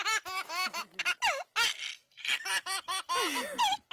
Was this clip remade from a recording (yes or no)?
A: no